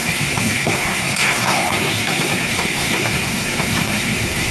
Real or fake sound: fake